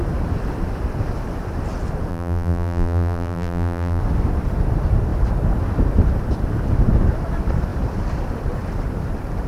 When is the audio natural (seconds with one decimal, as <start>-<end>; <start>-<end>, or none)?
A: 0.0-2.1; 4.0-9.5